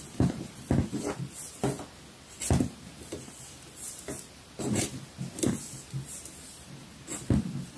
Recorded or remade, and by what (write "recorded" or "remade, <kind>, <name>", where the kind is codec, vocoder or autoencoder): recorded